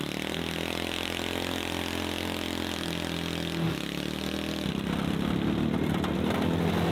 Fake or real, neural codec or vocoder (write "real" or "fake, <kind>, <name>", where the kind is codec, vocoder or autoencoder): real